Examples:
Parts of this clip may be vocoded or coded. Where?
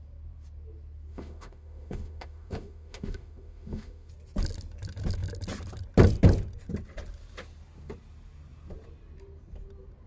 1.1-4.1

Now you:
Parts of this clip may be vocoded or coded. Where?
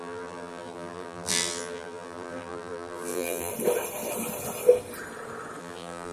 0.0-3.5; 5.6-6.1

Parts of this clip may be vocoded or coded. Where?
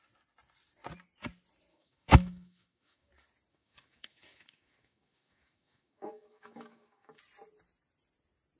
1.7-3.1; 3.5-7.2